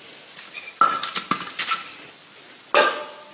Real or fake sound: real